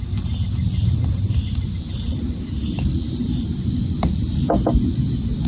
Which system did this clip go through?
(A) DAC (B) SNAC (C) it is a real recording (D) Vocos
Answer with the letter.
C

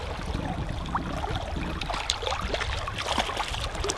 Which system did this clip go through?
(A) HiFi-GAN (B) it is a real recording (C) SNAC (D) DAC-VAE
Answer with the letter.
B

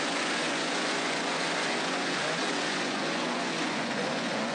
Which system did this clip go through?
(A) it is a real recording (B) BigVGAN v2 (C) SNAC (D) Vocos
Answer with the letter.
D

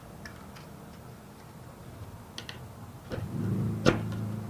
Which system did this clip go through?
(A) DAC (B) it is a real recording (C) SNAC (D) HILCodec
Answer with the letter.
B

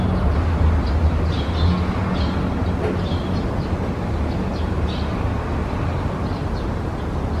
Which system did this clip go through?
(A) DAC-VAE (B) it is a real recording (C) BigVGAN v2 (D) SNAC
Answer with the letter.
B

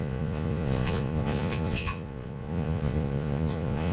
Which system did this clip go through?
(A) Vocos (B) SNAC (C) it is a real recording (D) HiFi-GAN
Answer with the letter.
A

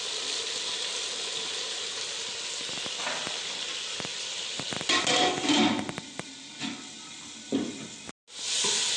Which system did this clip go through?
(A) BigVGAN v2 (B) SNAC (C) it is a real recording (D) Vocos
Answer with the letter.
C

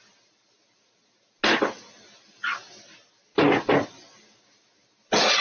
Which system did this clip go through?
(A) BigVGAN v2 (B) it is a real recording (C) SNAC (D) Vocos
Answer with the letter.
B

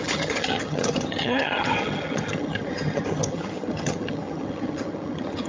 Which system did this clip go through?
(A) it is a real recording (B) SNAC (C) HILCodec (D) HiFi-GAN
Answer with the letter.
D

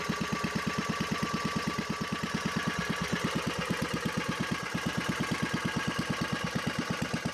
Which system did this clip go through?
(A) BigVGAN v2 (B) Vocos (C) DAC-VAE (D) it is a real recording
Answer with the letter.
D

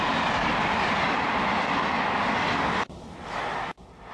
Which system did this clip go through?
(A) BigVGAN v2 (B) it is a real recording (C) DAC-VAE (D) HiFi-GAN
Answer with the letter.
B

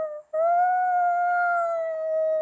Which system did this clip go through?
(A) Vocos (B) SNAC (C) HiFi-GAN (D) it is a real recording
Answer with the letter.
D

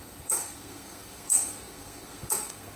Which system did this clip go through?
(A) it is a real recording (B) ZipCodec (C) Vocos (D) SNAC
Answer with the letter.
D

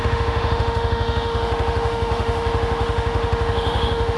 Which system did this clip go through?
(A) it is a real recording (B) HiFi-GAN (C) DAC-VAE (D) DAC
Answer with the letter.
C